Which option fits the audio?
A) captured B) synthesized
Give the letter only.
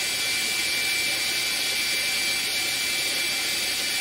A